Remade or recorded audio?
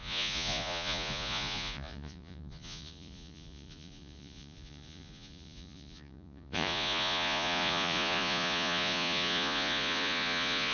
remade